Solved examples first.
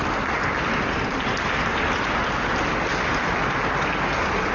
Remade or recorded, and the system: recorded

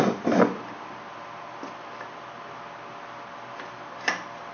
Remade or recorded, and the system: recorded